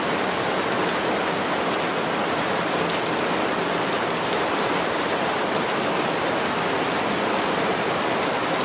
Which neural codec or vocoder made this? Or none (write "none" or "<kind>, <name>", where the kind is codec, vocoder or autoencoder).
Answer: none